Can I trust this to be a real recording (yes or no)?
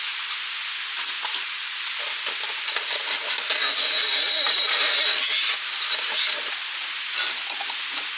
yes